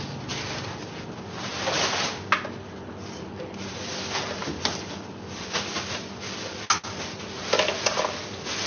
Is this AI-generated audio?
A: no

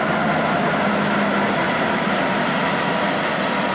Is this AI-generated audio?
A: no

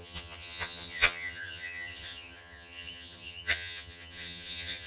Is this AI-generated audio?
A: yes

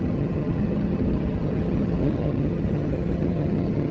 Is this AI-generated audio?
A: yes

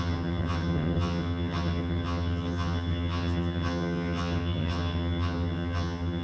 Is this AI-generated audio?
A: yes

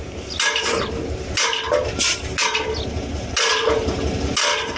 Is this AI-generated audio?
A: no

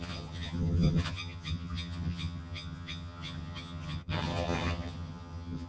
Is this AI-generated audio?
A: yes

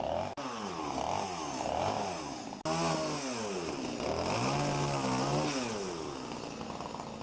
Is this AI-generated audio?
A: no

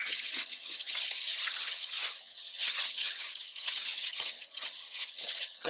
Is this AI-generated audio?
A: yes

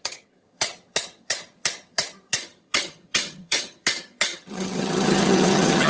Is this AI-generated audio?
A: yes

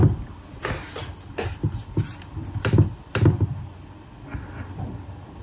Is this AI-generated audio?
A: no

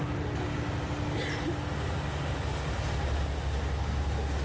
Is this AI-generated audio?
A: no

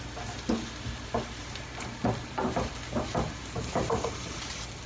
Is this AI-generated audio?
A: no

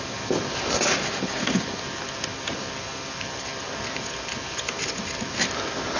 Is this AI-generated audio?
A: no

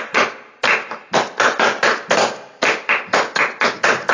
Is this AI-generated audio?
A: no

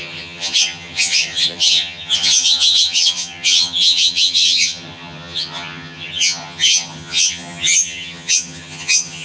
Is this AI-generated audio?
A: yes